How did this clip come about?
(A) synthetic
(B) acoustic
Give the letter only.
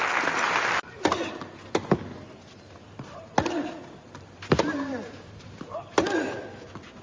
B